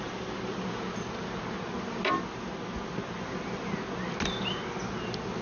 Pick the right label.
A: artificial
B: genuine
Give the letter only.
B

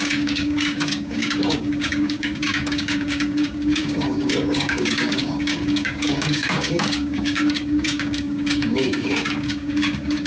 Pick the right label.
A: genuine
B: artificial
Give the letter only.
B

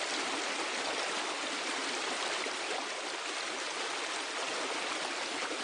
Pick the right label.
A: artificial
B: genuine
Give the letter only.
B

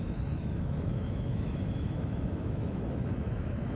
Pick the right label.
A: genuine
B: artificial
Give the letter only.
B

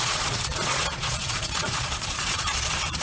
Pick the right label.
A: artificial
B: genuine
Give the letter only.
A